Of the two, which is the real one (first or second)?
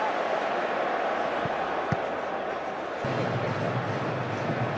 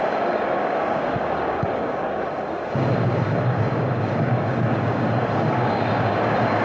first